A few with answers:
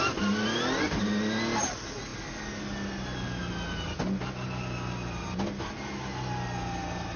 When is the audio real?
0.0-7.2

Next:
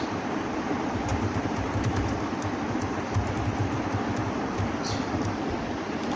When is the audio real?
0.0-1.1; 1.9-4.2; 5.4-6.2